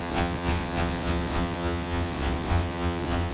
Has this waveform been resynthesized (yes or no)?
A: yes